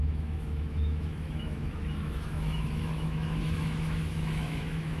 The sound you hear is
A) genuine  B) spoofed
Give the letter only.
B